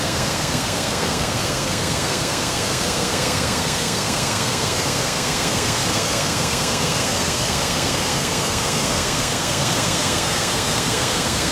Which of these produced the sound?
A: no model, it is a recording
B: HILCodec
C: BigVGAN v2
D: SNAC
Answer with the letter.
D